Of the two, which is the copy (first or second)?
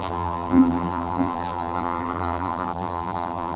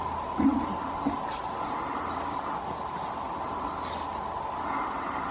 first